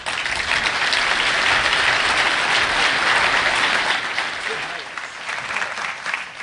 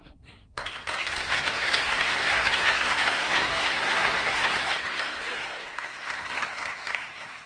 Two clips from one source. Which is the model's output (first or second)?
second